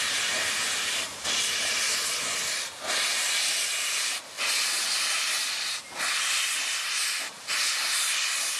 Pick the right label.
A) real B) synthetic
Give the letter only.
A